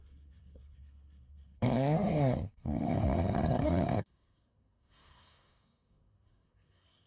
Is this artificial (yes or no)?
yes